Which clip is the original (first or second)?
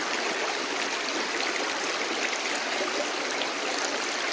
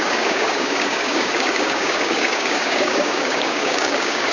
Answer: first